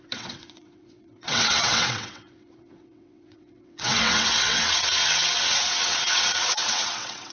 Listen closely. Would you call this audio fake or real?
fake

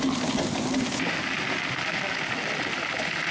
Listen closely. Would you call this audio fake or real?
real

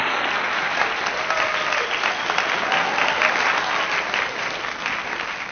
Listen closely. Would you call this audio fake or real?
real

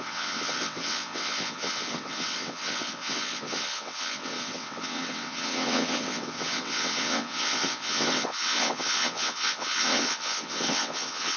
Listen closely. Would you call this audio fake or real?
fake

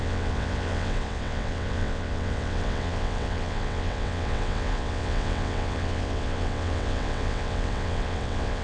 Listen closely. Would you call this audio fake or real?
fake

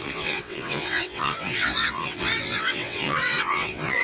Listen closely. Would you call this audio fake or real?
fake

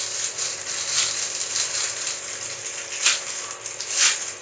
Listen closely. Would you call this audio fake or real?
real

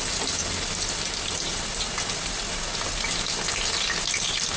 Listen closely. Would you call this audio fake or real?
real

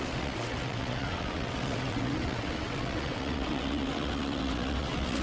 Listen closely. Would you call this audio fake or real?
fake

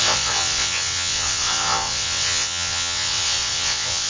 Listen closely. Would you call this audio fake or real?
fake